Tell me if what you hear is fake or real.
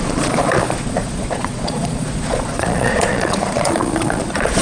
fake